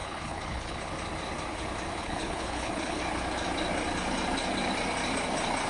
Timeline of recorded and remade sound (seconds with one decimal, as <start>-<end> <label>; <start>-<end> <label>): 0.0-0.9 remade; 0.9-2.0 recorded; 2.0-3.0 remade; 3.0-5.7 recorded